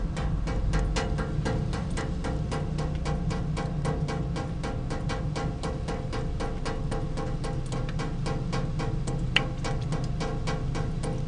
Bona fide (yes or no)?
yes